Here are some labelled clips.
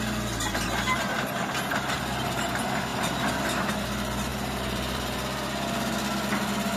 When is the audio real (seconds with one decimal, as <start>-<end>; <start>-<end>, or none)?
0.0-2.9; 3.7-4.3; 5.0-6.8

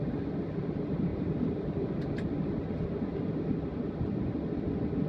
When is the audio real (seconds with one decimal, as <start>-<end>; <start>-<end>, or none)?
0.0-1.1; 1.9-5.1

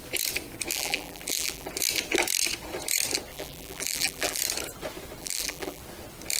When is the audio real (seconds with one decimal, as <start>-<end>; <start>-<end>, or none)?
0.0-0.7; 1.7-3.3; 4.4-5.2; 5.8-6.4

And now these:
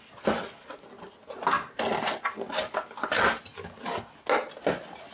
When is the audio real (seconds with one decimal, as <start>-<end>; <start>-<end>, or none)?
0.0-5.1

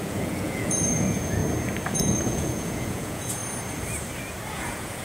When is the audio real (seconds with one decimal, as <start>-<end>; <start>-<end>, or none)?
1.4-1.9; 3.4-4.5

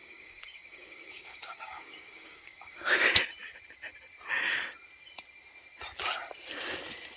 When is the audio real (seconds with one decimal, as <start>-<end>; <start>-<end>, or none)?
2.9-7.2

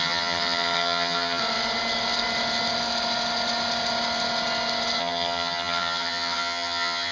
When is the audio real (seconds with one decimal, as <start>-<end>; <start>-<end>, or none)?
1.4-5.0